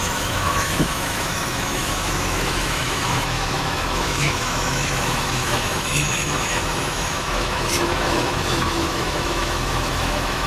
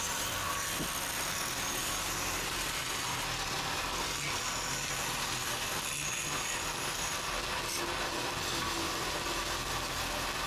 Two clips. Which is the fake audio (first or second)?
first